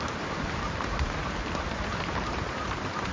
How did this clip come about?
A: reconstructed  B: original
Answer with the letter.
A